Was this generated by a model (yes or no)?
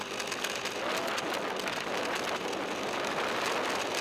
no